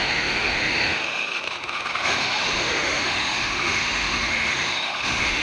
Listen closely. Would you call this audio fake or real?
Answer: fake